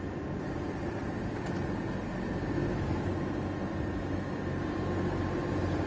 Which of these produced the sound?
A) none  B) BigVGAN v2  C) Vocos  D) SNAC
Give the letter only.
A